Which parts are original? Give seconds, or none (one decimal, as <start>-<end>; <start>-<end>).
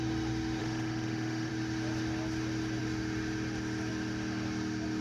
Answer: 0.0-0.6; 1.5-5.0